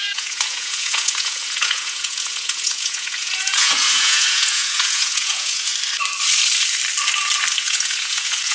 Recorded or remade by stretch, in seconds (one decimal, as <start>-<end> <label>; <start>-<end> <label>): 0.0-5.7 remade; 5.7-7.6 recorded; 7.6-8.5 remade